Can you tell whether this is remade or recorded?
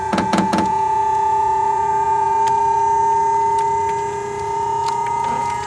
remade